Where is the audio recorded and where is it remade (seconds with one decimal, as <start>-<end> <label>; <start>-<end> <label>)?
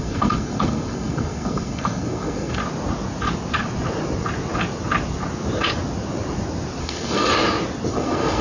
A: 0.0-2.6 remade; 2.6-6.8 recorded; 6.8-7.3 remade; 7.3-7.9 recorded; 7.9-8.4 remade